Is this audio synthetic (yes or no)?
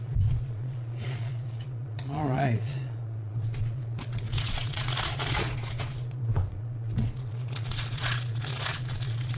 yes